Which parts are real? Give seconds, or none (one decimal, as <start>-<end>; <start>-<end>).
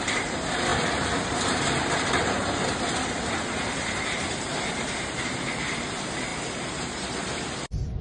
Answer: none